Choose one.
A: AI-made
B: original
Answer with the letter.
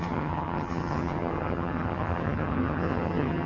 A